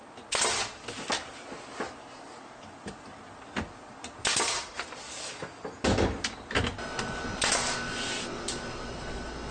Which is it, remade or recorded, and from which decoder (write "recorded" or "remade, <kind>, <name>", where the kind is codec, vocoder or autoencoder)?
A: recorded